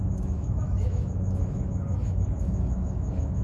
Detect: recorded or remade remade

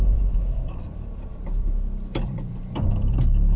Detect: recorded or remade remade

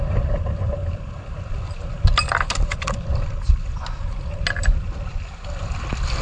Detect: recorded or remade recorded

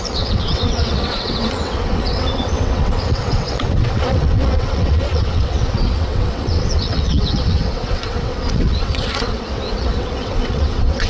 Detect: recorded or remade remade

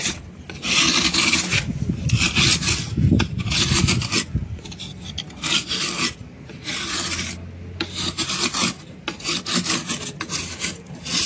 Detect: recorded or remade recorded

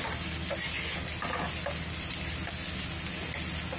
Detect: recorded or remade recorded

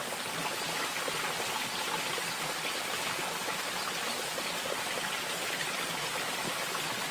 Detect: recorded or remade recorded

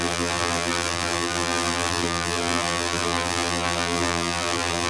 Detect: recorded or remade remade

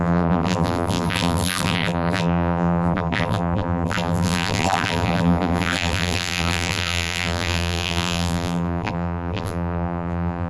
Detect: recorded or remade remade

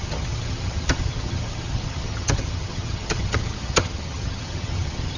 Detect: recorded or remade remade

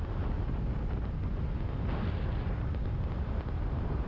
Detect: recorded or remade recorded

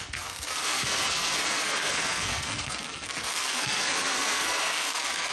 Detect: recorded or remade remade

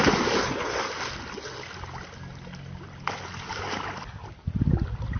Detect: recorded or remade recorded